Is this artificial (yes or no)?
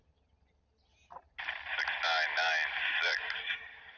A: no